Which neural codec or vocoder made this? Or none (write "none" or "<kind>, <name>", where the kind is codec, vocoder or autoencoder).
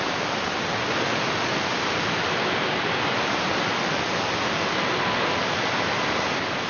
none